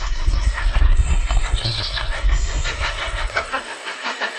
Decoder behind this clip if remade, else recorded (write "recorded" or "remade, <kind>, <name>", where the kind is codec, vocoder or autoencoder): remade, codec, SNAC